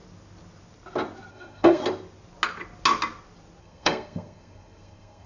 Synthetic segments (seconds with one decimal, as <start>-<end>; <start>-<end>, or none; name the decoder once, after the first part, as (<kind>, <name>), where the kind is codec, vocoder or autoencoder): 1.3-1.8 (codec, SNAC); 3.6-5.3